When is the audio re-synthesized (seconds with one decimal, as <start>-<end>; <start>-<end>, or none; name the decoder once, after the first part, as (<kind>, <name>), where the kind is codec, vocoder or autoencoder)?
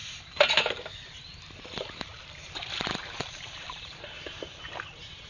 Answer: 1.6-2.1 (vocoder, BigVGAN v2); 2.9-5.3